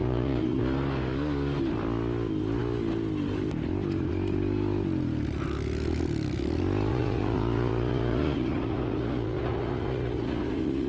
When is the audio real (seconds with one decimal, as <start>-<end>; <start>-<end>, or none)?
0.6-6.9